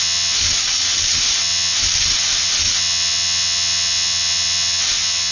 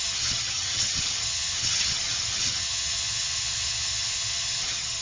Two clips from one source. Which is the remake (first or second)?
second